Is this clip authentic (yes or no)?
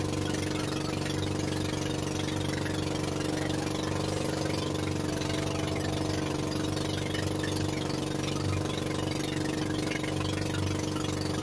yes